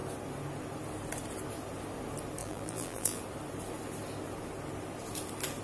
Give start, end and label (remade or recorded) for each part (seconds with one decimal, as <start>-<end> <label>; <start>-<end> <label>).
0.0-2.4 recorded; 2.4-3.2 remade; 3.2-5.6 recorded